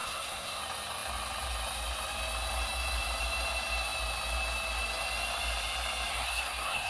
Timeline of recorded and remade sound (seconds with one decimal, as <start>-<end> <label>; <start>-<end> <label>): 0.0-0.6 remade; 0.6-6.1 recorded; 6.1-6.9 remade